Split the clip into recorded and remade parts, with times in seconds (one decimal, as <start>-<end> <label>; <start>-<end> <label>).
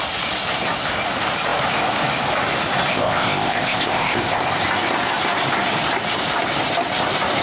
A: 0.0-2.9 recorded; 2.9-4.4 remade; 4.4-7.4 recorded